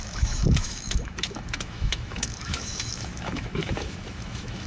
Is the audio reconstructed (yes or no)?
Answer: yes